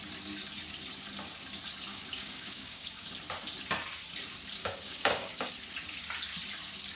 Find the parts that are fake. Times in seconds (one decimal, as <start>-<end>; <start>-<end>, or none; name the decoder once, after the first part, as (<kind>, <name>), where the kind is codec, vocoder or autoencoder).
1.9-3.1 (codec, DAC); 4.6-5.5